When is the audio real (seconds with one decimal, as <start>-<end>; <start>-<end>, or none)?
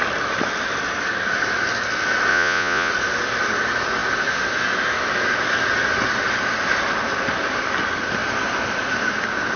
0.0-2.3; 2.9-9.6